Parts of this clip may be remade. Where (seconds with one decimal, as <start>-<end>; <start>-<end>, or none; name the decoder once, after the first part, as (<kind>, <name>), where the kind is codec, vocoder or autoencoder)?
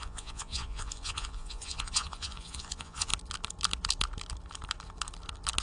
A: 0.0-3.1 (vocoder, Vocos)